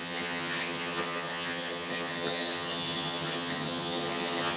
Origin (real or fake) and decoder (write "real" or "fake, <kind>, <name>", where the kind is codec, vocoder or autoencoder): fake, vocoder, HiFi-GAN